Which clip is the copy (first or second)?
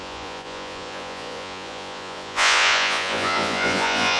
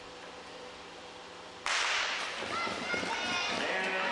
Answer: first